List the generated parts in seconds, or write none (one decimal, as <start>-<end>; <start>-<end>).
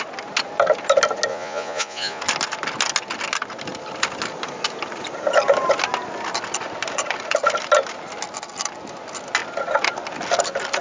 1.3-2.2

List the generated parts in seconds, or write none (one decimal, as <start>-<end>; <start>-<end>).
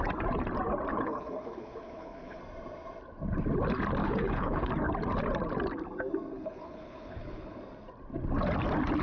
0.9-2.4; 4.0-4.7; 6.3-7.6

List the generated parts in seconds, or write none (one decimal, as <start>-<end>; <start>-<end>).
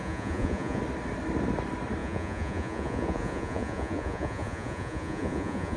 0.0-0.8; 2.0-5.8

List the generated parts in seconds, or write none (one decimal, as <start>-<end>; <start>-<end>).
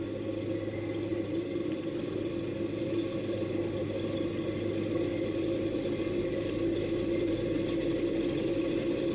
none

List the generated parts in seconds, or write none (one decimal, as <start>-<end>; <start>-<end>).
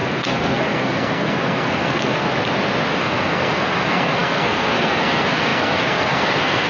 0.0-2.3; 2.9-6.7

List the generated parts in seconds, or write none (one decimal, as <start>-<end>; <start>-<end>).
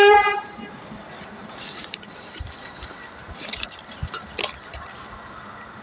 0.0-0.7; 1.4-2.4; 3.2-3.9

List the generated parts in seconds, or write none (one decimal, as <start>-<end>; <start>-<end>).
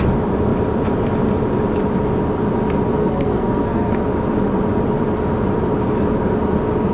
3.0-3.9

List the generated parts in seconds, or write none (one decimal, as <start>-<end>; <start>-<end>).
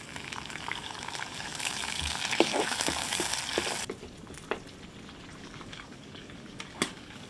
0.0-3.3; 5.4-7.3